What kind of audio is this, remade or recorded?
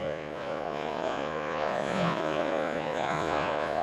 remade